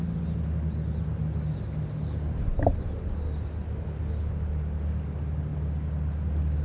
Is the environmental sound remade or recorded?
recorded